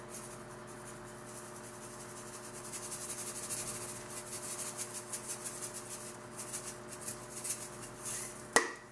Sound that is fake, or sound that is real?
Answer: real